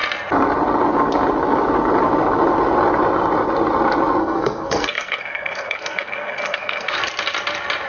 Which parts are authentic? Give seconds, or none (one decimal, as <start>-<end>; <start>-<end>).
0.0-4.2; 7.0-7.9